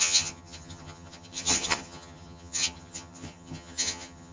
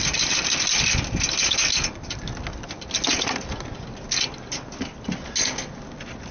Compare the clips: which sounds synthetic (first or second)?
first